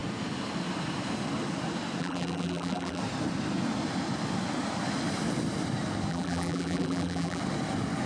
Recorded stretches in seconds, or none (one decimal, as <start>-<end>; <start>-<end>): 0.0-2.0; 3.0-6.1; 7.4-8.1